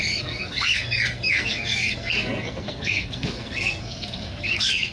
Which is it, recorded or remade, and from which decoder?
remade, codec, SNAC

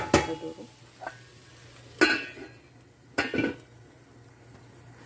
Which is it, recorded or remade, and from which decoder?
recorded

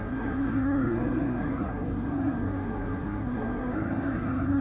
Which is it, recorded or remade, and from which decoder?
remade, codec, SNAC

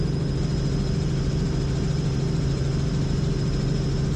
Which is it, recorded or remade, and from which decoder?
recorded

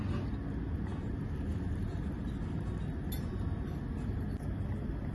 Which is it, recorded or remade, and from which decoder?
recorded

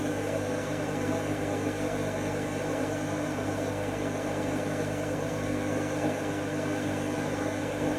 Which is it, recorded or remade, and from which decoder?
remade, codec, SNAC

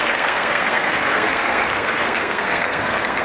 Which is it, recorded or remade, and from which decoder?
remade, codec, SNAC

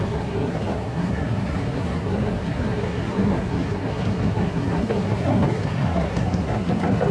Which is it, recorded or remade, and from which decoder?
remade, codec, SNAC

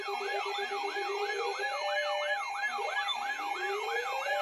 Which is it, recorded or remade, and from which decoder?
recorded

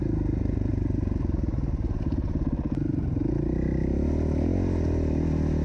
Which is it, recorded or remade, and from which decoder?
recorded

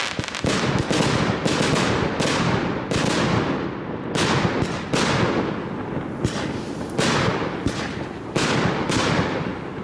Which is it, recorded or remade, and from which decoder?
recorded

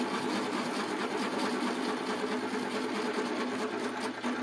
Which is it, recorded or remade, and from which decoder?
recorded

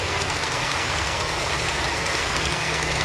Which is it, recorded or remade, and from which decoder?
remade, codec, SNAC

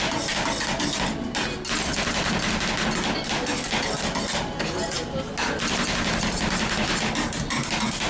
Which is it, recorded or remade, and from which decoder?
recorded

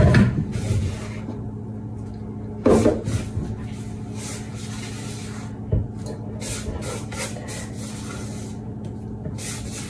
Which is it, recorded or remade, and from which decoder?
recorded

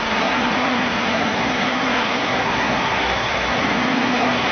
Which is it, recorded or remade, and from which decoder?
remade, codec, SNAC